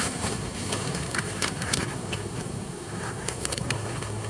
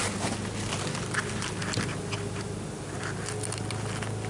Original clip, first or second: second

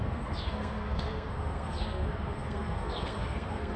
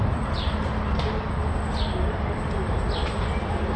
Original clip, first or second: second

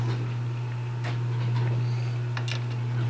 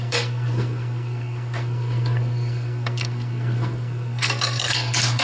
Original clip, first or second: first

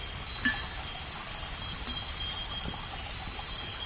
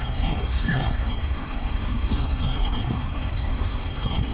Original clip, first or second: first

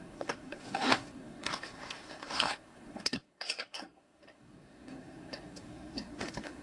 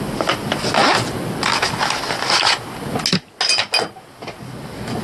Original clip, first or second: second